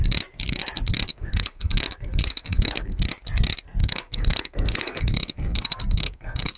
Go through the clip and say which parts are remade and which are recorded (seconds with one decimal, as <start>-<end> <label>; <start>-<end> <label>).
0.0-1.1 recorded; 1.1-1.7 remade; 1.7-2.2 recorded; 2.2-3.0 remade; 3.0-3.8 recorded; 3.8-6.6 remade